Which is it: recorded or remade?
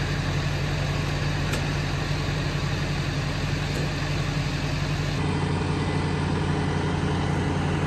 recorded